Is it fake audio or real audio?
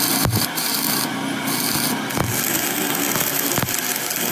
real